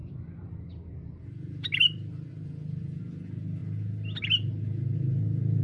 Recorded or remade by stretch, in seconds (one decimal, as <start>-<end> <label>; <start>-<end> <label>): 0.0-3.0 remade; 3.0-5.6 recorded